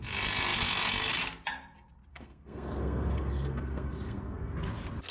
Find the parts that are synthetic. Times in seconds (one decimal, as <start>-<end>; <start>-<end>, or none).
2.1-4.5